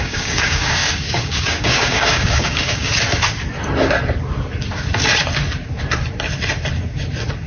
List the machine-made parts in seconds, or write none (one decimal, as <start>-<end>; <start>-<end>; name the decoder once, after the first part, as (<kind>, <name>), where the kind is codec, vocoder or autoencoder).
0.0-2.9 (codec, DAC)

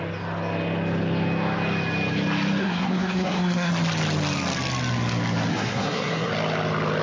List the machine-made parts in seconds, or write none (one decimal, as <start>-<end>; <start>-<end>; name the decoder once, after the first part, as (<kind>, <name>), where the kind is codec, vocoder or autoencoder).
2.6-3.7 (codec, SNAC); 5.5-6.3